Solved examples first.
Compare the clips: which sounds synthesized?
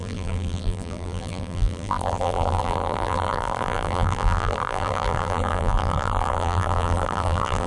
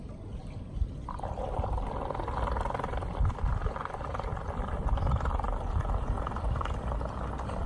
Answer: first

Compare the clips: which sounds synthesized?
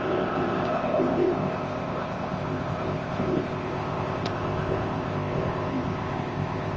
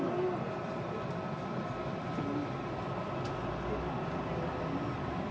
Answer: first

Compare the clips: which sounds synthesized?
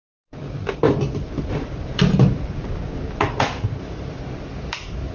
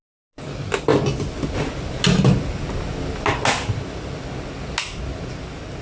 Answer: first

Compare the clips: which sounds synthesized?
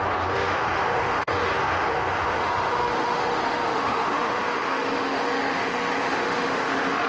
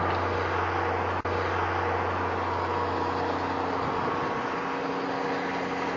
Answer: first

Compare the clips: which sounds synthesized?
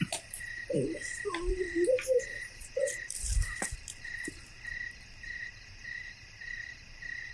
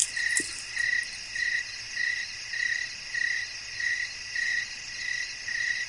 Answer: first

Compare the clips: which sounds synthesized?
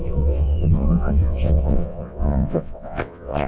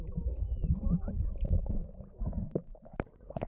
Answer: first